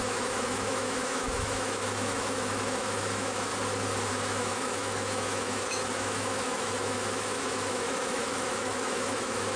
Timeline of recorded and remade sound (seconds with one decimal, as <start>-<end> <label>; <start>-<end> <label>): 0.0-3.5 remade; 3.5-4.1 recorded; 4.1-9.6 remade